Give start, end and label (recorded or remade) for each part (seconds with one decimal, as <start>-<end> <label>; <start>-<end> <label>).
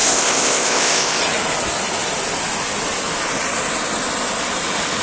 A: 0.0-1.2 remade; 1.2-5.0 recorded